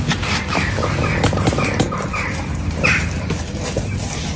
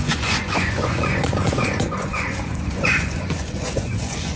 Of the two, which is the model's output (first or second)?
second